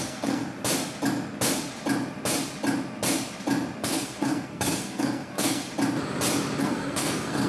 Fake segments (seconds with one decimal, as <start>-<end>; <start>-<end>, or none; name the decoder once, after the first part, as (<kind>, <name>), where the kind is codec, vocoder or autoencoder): 0.0-0.4 (codec, SNAC); 3.8-5.6; 6.6-7.5